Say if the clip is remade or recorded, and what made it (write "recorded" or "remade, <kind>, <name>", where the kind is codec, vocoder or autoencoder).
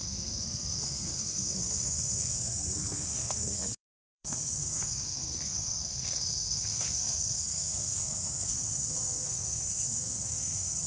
remade, codec, SNAC